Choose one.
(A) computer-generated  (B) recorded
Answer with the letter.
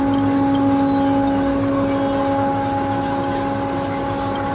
B